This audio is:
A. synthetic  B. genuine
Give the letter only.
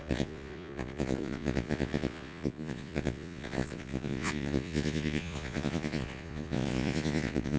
A